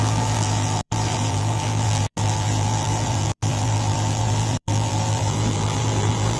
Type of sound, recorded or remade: remade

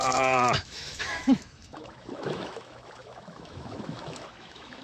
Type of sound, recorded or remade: remade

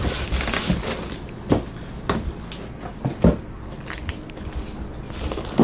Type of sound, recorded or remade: recorded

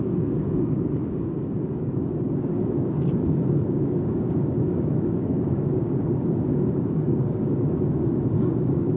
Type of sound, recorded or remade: remade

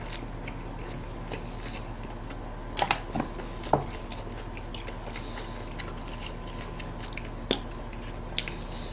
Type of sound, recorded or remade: recorded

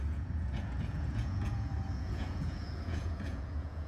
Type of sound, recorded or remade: remade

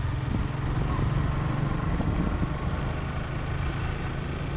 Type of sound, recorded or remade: recorded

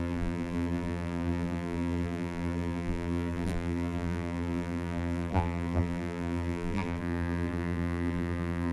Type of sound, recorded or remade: remade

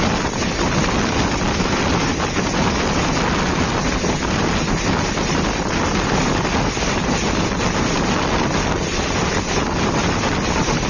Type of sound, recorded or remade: recorded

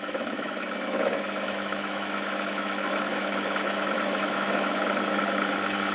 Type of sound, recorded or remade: remade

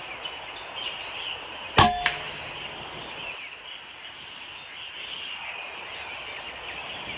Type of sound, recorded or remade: recorded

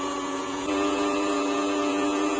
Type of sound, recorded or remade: remade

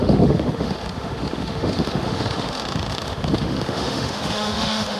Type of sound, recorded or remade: remade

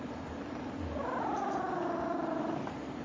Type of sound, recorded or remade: recorded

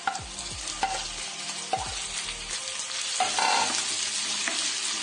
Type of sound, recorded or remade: recorded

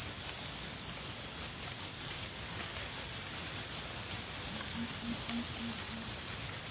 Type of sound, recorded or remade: recorded